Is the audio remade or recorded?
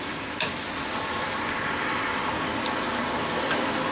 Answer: recorded